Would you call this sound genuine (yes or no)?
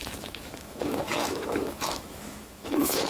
no